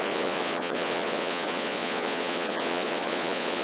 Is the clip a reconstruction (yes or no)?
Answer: yes